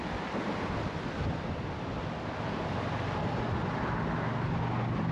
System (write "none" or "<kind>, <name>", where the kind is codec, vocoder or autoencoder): none